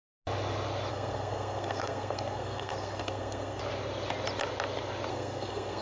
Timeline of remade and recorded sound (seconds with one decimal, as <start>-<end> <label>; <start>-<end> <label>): 0.0-0.9 recorded; 0.9-3.6 remade; 3.6-5.1 recorded; 5.1-5.8 remade